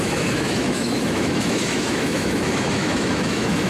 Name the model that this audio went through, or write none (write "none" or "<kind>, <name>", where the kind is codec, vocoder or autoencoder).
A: autoencoder, DAC-VAE